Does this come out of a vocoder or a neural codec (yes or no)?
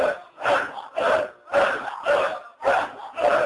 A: no